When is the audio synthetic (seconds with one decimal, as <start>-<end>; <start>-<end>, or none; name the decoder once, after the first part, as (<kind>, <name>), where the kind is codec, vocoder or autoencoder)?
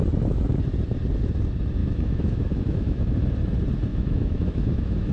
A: 1.8-3.1 (autoencoder, DAC-VAE); 3.9-5.1